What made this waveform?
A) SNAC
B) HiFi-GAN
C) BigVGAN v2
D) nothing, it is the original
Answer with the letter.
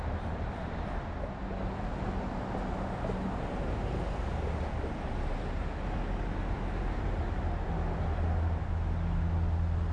D